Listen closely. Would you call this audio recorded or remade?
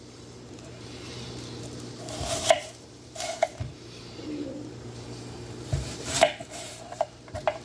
remade